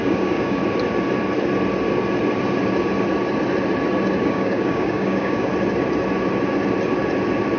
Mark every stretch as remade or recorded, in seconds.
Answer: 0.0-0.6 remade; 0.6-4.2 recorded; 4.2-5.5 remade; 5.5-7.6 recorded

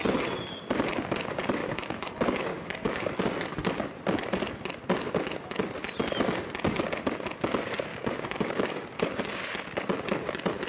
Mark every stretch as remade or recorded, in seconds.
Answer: 0.0-1.6 recorded; 1.6-2.1 remade; 2.1-2.5 recorded; 2.5-3.1 remade; 3.1-7.9 recorded; 7.9-9.2 remade; 9.2-10.7 recorded